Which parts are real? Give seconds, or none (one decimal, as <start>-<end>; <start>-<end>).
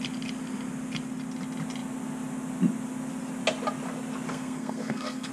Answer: 0.0-4.3